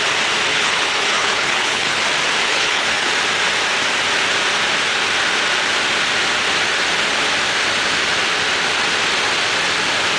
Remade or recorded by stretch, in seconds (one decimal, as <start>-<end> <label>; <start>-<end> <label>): 0.0-0.5 recorded; 0.5-2.0 remade; 2.0-2.4 recorded; 2.4-3.1 remade; 3.1-10.2 recorded